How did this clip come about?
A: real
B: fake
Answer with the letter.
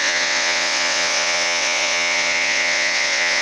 B